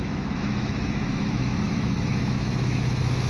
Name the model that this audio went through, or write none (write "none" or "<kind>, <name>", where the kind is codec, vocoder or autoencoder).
autoencoder, DAC-VAE